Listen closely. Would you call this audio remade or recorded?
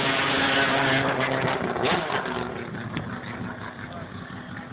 recorded